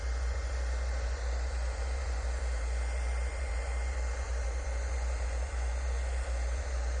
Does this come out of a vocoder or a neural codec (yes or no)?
yes